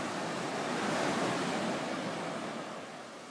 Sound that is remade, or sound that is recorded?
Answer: recorded